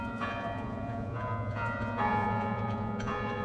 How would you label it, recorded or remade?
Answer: remade